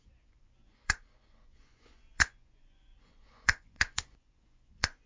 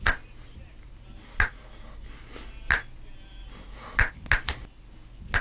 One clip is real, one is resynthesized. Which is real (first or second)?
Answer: second